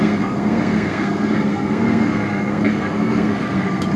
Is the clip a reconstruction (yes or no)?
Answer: yes